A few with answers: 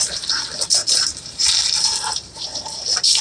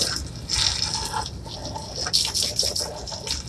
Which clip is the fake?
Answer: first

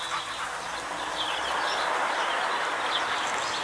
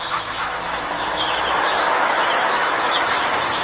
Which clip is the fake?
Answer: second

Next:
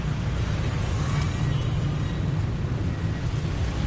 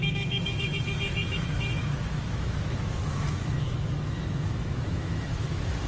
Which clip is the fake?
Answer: second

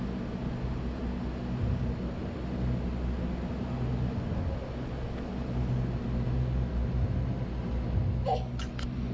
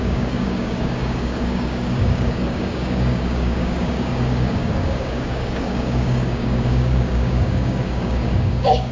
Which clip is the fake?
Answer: second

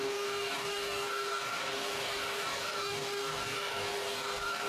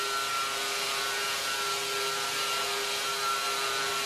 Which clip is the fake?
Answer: first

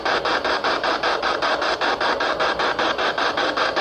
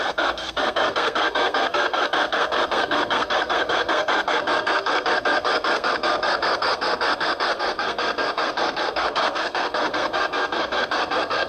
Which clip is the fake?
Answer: second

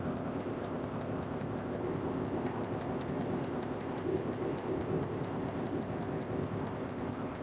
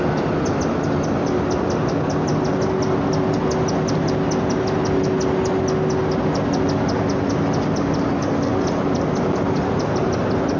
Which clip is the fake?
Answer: first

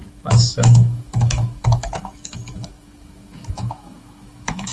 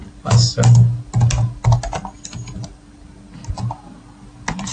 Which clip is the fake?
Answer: first